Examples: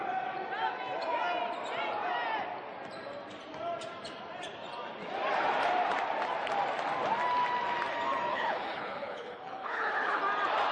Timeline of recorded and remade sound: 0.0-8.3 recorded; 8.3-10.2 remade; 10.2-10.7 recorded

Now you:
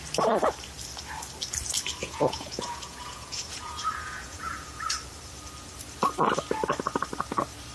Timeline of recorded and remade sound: 0.0-2.0 recorded; 2.0-4.8 remade; 4.8-7.7 recorded

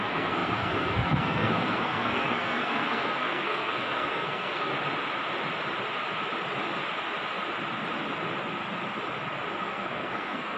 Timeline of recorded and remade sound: 0.0-4.7 remade; 4.7-9.6 recorded; 9.6-10.6 remade